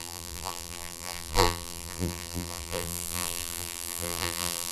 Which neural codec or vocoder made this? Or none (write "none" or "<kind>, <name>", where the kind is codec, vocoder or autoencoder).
vocoder, BigVGAN v2